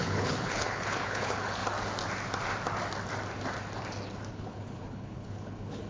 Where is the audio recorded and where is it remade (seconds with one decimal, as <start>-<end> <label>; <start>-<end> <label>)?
0.0-1.6 remade; 1.6-4.3 recorded; 4.3-5.9 remade